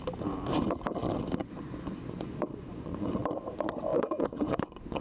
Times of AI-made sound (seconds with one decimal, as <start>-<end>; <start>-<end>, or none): 1.4-3.2; 3.9-5.0